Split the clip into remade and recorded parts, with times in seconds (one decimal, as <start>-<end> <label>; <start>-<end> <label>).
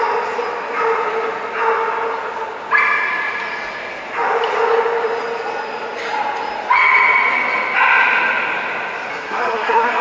0.0-9.1 recorded; 9.1-10.0 remade